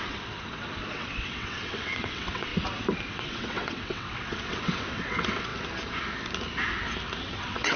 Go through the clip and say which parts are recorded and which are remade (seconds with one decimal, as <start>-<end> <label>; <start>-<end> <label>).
0.0-2.5 remade; 2.5-3.1 recorded; 3.1-5.5 remade; 5.5-7.2 recorded; 7.2-7.8 remade